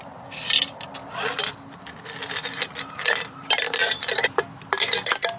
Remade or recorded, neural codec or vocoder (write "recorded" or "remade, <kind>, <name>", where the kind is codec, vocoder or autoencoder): recorded